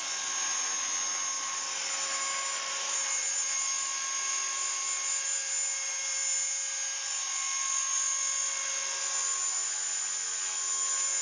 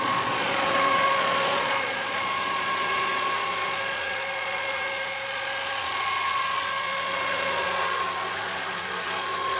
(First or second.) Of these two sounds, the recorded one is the first